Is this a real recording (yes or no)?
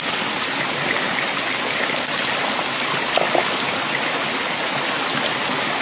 yes